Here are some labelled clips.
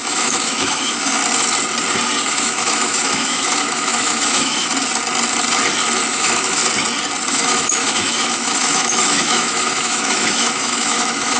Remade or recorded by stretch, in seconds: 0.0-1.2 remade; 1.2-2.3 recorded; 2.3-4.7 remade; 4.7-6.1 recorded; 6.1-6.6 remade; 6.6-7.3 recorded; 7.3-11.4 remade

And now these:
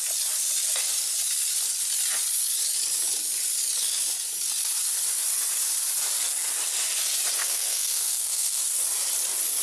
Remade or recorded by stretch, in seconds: 0.0-7.4 recorded; 7.4-8.6 remade; 8.6-9.6 recorded

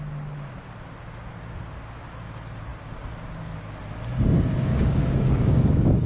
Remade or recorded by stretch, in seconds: 0.0-4.7 recorded; 4.7-6.1 remade

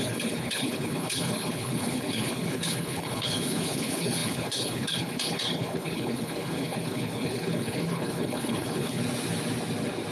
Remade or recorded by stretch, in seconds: 0.0-9.0 remade; 9.0-10.1 recorded

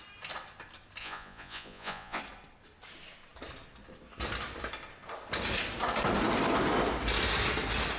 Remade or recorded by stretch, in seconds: 0.0-1.0 recorded; 1.0-2.2 remade; 2.2-8.0 recorded

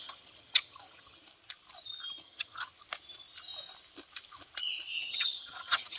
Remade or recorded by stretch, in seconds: 0.0-1.2 remade; 1.2-2.2 recorded; 2.2-2.7 remade; 2.7-5.0 recorded; 5.0-6.0 remade